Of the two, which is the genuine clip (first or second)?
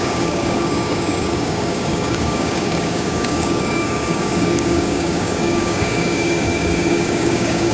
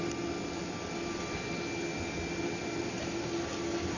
second